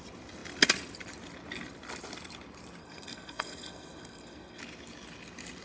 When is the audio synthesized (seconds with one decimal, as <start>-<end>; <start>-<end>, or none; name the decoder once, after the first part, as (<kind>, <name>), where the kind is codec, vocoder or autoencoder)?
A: 2.8-4.6 (codec, SNAC)